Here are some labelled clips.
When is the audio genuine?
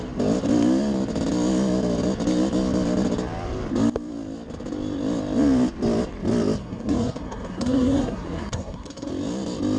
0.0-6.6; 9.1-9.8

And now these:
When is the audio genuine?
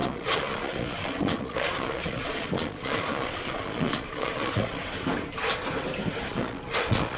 4.8-6.3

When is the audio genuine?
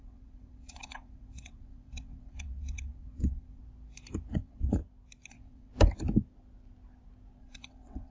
3.6-4.3; 4.8-5.3; 5.7-7.4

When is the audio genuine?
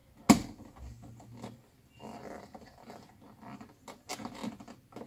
0.0-5.1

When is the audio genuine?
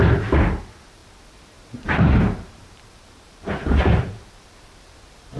0.0-1.0; 3.8-5.4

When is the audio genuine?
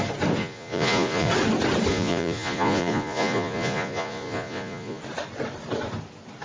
0.0-0.4; 1.3-1.9; 5.0-6.4